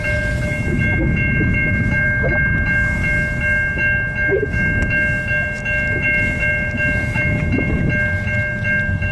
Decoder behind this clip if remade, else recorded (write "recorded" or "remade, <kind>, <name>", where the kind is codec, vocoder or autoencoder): recorded